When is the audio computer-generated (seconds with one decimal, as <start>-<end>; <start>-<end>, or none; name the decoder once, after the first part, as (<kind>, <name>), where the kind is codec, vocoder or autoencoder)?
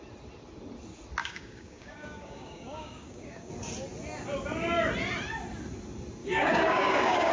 1.2-3.5 (codec, DAC); 6.2-7.3